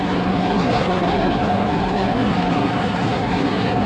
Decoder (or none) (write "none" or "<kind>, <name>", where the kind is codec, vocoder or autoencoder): codec, SNAC